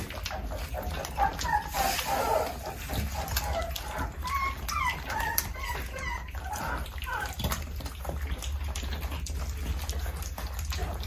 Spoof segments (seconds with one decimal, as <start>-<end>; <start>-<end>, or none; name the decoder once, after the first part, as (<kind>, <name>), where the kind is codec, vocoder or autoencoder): none